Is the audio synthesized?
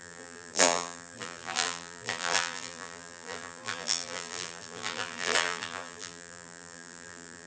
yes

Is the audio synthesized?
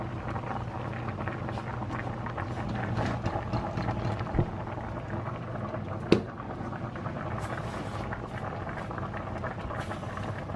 no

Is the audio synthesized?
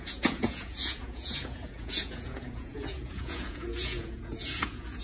yes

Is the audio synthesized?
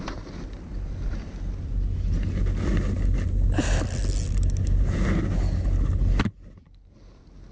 no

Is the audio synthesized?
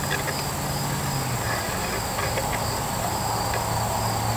no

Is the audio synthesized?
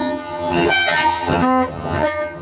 yes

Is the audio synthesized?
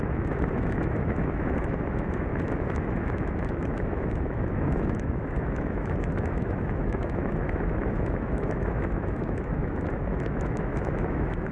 yes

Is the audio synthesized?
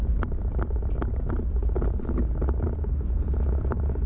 no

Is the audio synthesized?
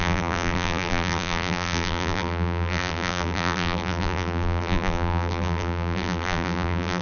yes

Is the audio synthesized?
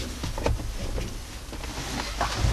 no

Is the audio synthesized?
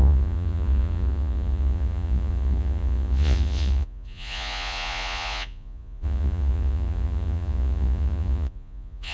yes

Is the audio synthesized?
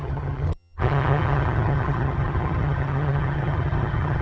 yes